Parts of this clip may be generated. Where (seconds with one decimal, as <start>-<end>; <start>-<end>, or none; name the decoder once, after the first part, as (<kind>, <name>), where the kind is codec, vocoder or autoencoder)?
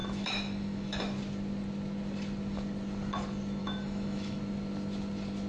0.0-1.0 (autoencoder, DAC-VAE); 3.6-4.4